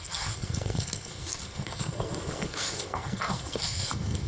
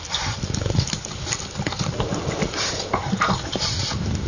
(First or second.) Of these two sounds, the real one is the second